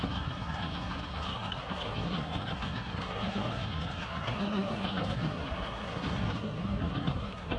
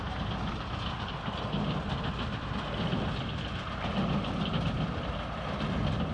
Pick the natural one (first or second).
second